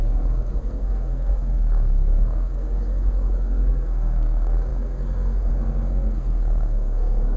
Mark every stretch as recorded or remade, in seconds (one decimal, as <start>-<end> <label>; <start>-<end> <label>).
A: 0.0-7.4 remade

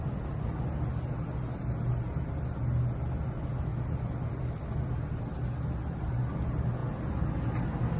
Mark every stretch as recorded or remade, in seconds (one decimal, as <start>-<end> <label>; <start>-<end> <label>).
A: 0.0-8.0 recorded

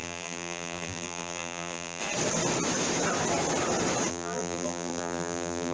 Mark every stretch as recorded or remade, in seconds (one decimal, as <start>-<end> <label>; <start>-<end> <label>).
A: 0.0-2.0 remade; 2.0-4.1 recorded; 4.1-5.7 remade

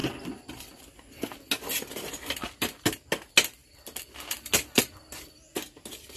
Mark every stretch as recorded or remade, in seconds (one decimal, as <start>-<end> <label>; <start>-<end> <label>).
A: 0.0-0.8 remade; 0.8-3.6 recorded; 3.6-4.8 remade; 4.8-6.2 recorded

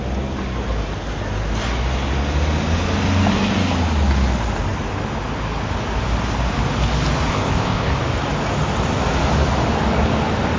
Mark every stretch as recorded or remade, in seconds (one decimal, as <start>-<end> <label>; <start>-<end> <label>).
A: 0.0-7.3 recorded; 7.3-7.9 remade; 7.9-10.6 recorded

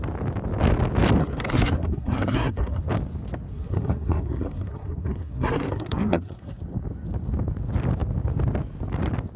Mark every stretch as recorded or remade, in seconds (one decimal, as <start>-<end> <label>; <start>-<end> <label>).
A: 0.0-1.2 recorded; 1.2-2.8 remade; 2.8-3.5 recorded; 3.5-6.6 remade; 6.6-9.4 recorded

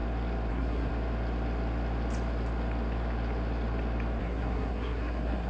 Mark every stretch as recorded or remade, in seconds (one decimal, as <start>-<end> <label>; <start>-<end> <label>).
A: 0.0-0.5 recorded; 0.5-0.9 remade; 0.9-4.2 recorded; 4.2-5.5 remade